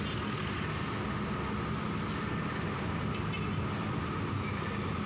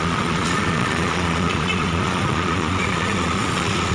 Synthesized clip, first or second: second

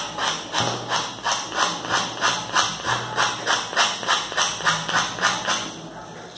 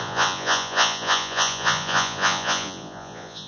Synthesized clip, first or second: second